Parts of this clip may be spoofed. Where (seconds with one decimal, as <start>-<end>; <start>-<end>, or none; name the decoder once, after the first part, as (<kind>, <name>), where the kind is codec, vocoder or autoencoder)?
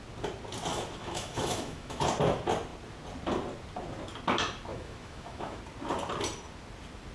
0.7-2.0 (autoencoder, DAC-VAE); 4.7-5.6